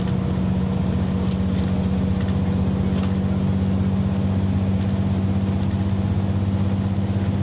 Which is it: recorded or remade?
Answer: recorded